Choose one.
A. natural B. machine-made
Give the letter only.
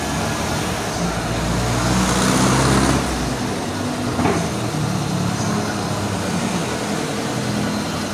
A